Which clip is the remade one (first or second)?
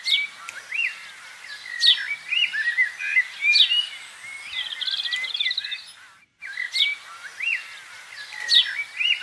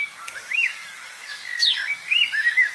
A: second